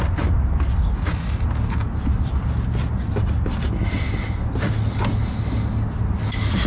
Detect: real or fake real